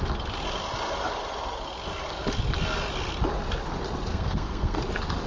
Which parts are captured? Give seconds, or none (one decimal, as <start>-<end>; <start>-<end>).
0.0-4.1; 4.8-5.3